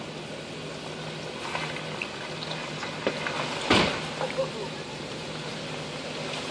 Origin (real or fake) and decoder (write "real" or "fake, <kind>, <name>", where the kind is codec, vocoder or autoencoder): real